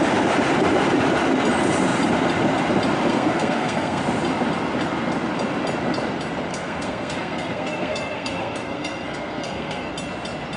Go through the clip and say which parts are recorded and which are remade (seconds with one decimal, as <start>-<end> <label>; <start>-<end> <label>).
0.0-3.1 recorded; 3.1-4.0 remade; 4.0-6.5 recorded; 6.5-9.9 remade; 9.9-10.6 recorded